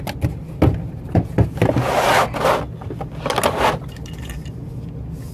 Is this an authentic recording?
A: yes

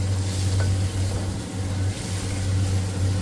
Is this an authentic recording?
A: yes